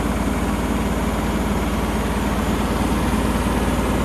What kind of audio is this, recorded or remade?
recorded